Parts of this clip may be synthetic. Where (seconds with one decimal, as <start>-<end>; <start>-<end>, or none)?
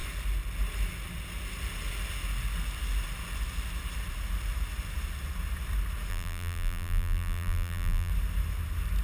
6.1-8.1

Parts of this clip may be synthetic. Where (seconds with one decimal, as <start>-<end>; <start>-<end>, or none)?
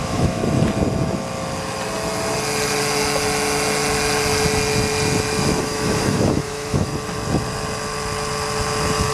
0.0-0.4; 5.6-6.9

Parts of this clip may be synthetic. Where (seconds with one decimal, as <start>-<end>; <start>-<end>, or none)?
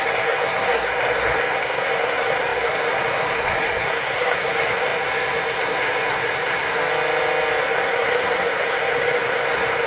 0.0-6.8; 7.6-9.9